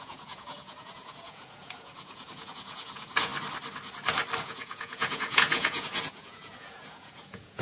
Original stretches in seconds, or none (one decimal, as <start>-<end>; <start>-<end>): 3.3-4.4